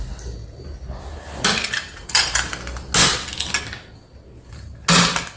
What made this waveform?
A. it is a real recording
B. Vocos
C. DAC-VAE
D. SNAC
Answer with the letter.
A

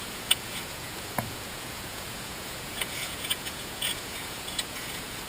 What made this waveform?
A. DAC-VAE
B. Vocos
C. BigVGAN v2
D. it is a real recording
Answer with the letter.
B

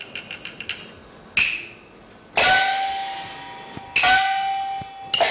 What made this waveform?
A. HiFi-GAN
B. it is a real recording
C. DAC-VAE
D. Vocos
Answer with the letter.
B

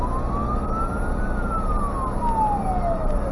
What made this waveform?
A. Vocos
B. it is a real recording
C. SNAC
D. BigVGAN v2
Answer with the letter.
B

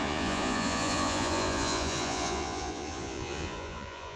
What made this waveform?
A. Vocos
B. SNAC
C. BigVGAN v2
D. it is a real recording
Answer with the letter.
A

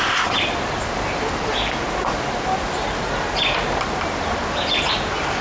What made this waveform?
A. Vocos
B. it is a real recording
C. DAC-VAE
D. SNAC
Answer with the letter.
B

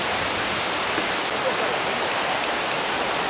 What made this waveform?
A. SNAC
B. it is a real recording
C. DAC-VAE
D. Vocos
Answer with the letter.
B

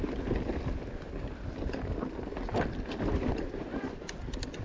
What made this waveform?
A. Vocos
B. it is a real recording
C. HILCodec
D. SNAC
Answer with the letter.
B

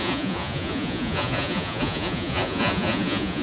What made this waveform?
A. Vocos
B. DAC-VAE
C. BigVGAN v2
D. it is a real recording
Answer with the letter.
A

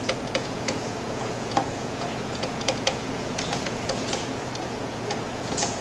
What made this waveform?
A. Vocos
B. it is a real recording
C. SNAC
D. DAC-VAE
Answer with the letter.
A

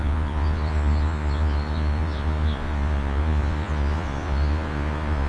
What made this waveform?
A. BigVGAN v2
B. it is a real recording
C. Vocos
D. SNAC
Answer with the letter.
C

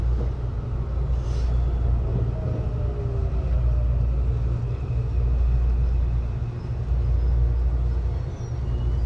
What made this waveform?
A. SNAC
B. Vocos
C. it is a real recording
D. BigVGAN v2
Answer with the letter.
C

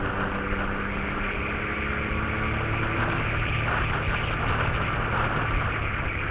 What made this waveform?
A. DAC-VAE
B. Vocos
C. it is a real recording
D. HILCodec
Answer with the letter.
C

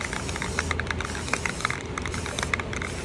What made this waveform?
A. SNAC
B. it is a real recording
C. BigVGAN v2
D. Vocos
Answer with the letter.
B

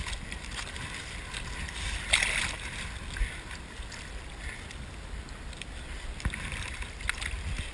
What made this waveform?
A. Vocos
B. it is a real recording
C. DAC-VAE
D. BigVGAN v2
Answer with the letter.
B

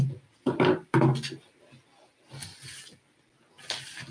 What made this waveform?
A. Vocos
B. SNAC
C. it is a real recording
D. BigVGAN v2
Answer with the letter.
C